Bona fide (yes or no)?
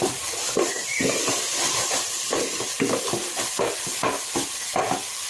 no